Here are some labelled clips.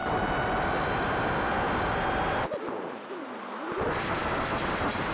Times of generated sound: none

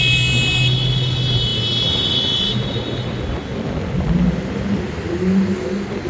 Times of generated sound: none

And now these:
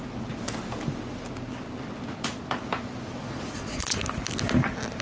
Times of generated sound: 3.2-4.0 (vocoder, Vocos)

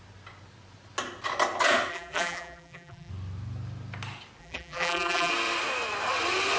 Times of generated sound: 1.9-3.1 (vocoder, BigVGAN v2); 4.4-5.3

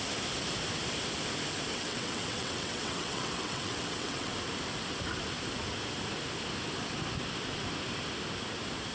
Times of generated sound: 1.7-4.3 (vocoder, WaveNeXt)